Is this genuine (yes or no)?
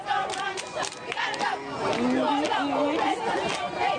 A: yes